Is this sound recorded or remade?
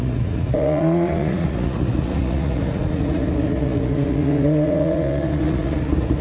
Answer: remade